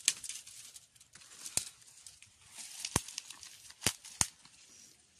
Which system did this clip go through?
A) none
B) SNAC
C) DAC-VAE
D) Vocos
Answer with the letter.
A